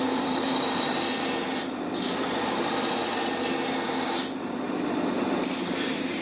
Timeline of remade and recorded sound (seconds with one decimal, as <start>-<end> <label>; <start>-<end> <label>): 0.0-0.9 remade; 0.9-6.2 recorded